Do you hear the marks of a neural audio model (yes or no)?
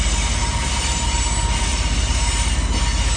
no